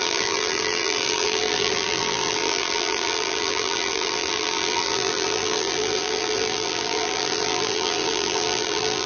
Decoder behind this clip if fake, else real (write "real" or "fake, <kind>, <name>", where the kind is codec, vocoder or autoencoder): fake, vocoder, BigVGAN v2